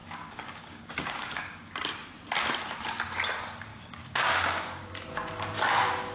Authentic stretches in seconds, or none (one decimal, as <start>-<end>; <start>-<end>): 1.7-3.7; 4.9-6.1